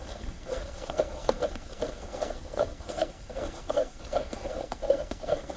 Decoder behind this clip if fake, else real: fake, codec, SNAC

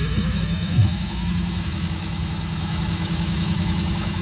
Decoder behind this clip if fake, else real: fake, autoencoder, DAC-VAE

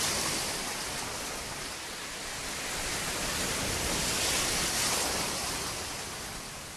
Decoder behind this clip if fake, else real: real